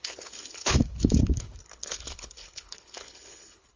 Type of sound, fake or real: fake